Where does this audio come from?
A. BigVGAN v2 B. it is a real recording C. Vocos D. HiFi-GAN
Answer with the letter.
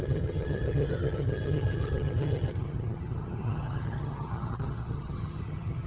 D